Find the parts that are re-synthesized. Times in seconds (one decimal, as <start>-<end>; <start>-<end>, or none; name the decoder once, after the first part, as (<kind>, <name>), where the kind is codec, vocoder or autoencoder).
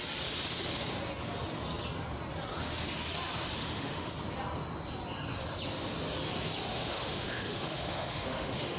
3.6-4.1 (autoencoder, DAC-VAE); 6.7-8.8